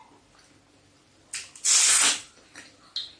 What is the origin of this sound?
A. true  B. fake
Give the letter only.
A